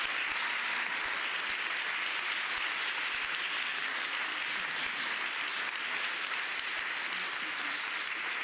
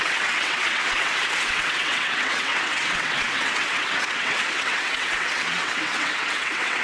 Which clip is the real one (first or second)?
first